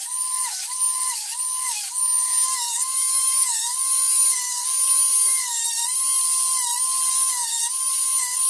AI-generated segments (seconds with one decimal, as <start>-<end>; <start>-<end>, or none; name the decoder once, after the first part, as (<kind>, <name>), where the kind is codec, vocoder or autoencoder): 0.0-5.6 (codec, DAC); 7.1-8.5